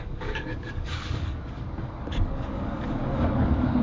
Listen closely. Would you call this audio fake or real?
fake